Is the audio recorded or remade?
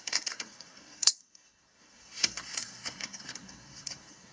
remade